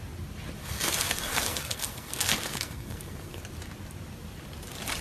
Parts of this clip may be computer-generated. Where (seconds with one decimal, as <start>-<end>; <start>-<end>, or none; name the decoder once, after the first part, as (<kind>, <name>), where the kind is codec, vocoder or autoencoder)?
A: 0.6-3.4 (codec, SNAC)